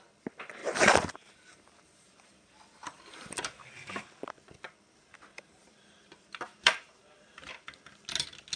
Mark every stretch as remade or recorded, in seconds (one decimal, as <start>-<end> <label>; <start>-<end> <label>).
0.0-0.6 recorded; 0.6-4.1 remade; 4.1-5.3 recorded; 5.3-7.5 remade; 7.5-8.6 recorded